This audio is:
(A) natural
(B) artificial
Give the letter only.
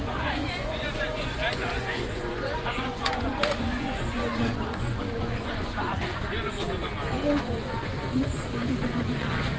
B